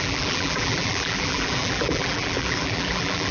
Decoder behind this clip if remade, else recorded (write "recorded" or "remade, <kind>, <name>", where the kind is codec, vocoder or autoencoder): remade, vocoder, BigVGAN v2